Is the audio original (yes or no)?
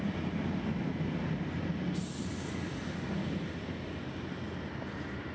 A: yes